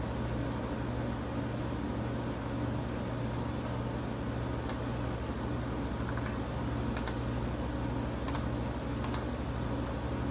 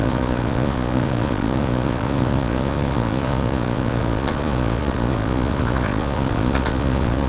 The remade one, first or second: second